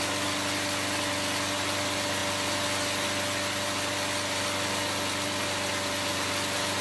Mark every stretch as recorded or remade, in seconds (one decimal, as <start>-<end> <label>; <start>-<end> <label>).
0.0-6.8 recorded